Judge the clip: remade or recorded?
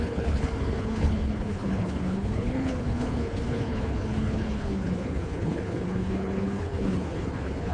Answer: remade